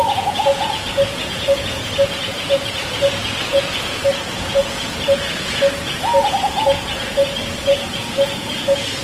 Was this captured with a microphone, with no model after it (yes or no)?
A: no